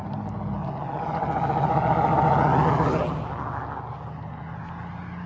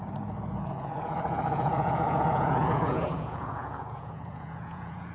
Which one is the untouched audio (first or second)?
first